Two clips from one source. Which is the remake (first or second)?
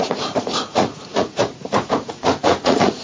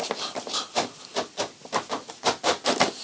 first